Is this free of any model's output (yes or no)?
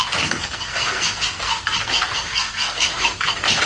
no